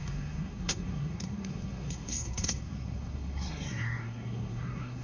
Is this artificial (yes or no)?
yes